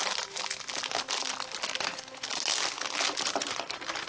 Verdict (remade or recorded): recorded